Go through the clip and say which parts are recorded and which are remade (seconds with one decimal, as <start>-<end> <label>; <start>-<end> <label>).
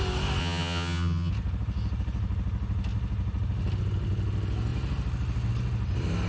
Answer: 0.0-0.4 recorded; 0.4-1.3 remade; 1.3-6.3 recorded